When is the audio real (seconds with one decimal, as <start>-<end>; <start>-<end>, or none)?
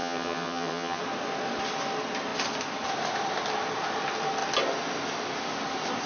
1.0-6.1